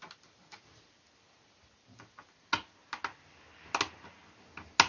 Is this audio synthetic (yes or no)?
no